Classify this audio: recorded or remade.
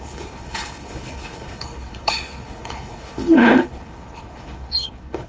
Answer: remade